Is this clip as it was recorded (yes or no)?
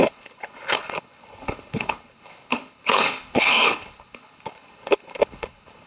no